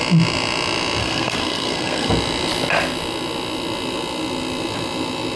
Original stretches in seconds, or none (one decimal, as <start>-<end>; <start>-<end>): 0.0-1.0; 2.1-5.4